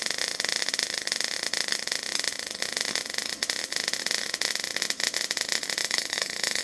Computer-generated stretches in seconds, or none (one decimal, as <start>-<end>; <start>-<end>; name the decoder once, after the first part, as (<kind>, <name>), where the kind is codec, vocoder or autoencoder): 5.8-6.6 (autoencoder, DAC-VAE)